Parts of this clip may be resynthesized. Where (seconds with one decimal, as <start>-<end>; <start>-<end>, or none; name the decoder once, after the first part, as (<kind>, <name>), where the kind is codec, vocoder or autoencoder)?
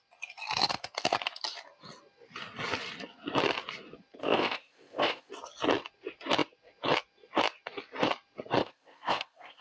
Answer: 4.2-5.3 (codec, ZipCodec); 8.6-9.6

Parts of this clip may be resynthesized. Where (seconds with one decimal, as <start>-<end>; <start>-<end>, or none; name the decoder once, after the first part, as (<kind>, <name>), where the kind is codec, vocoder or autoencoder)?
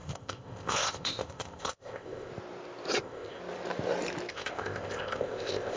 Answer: 0.0-2.3 (codec, ZipCodec); 3.0-3.4; 4.3-5.8